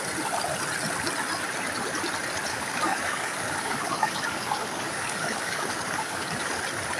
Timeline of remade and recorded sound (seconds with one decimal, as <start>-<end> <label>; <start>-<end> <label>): 0.0-2.5 recorded; 2.5-6.6 remade; 6.6-7.0 recorded